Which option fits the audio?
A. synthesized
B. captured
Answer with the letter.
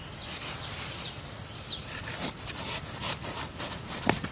A